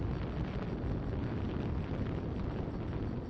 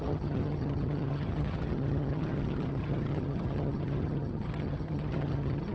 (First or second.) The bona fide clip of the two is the first